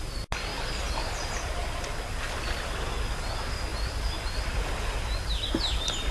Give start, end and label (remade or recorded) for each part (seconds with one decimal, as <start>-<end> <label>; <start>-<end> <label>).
0.0-0.5 recorded; 0.5-2.9 remade; 2.9-3.7 recorded; 3.7-4.7 remade; 4.7-6.1 recorded